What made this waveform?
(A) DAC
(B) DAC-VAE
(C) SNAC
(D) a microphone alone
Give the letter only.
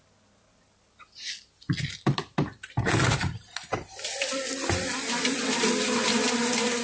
D